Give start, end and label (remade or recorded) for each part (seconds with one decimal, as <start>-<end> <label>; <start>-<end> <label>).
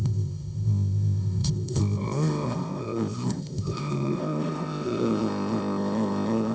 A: 0.0-6.5 remade